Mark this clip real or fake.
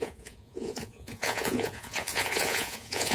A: fake